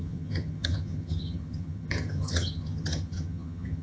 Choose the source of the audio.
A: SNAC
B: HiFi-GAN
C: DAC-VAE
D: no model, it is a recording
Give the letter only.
B